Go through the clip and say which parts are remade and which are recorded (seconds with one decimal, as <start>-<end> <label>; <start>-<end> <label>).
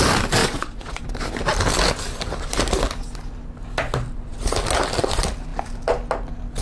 0.0-0.4 recorded; 0.4-1.0 remade; 1.0-6.6 recorded